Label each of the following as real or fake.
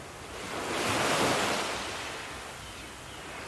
real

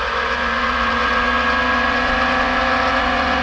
fake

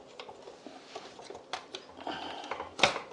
real